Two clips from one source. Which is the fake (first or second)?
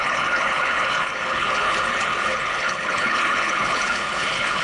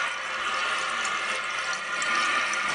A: first